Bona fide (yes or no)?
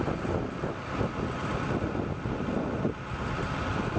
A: yes